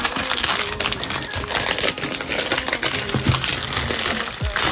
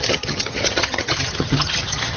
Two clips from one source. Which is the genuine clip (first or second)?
first